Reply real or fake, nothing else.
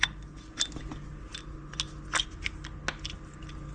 real